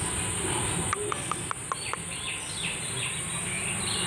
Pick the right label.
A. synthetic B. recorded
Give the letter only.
B